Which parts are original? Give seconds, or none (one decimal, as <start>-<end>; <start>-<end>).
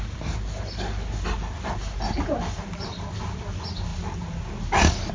0.0-5.1